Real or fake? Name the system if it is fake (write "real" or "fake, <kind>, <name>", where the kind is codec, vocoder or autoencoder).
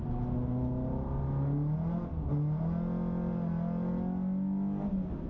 real